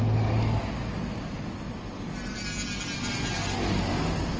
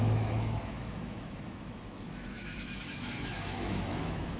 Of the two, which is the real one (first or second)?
first